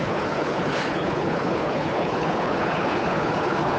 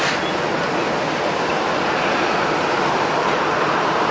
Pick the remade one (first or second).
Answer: first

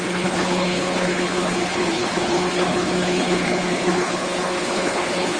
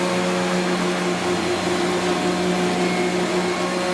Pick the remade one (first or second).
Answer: first